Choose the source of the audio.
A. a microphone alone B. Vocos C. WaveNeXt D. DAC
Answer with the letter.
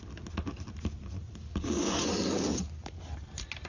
A